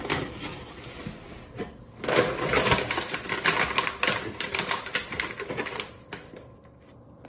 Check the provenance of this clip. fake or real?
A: fake